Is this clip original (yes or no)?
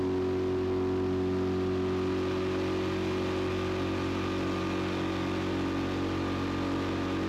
yes